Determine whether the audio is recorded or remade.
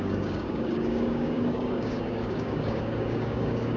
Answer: remade